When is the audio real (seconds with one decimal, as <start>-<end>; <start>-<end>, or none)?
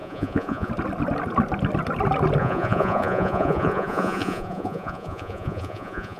0.7-2.4